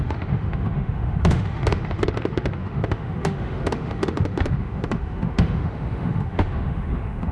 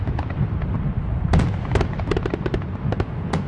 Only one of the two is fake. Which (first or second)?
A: first